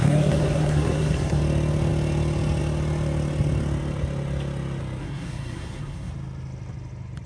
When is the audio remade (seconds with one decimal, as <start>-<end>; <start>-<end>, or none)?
0.0-1.4; 5.0-6.1